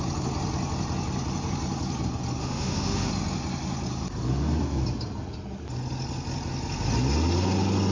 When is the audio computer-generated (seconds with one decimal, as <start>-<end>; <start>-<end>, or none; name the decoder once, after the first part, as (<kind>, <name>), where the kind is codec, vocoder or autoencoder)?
2.4-3.1 (autoencoder, DAC-VAE)